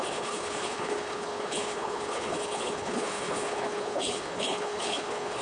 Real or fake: fake